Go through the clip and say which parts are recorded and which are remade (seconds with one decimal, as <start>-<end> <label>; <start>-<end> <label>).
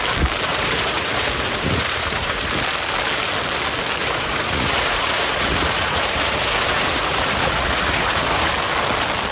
0.0-0.5 recorded; 0.5-2.5 remade; 2.5-4.0 recorded; 4.0-8.5 remade; 8.5-9.3 recorded